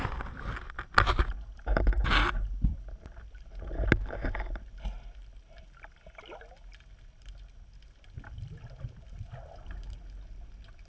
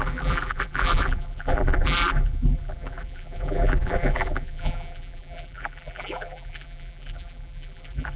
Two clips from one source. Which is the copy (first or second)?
second